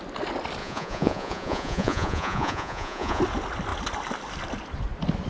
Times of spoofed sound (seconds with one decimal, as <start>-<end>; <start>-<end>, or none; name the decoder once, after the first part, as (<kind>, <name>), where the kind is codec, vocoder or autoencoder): 0.6-3.2 (vocoder, Vocos)